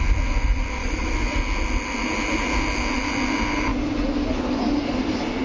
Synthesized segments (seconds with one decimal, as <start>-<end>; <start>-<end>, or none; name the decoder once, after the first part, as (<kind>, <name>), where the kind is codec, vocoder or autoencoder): 0.8-1.4 (autoencoder, DAC-VAE)